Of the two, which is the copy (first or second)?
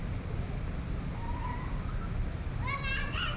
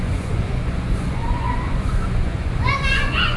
second